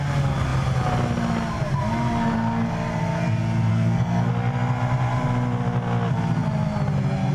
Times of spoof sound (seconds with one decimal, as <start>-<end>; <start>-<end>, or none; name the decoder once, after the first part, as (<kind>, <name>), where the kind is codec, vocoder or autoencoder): 3.7-4.3 (codec, SNAC)